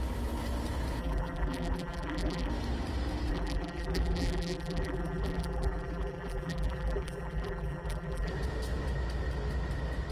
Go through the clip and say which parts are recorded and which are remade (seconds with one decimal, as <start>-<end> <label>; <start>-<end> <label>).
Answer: 0.0-1.0 recorded; 1.0-2.5 remade; 2.5-3.3 recorded; 3.3-8.3 remade; 8.3-10.1 recorded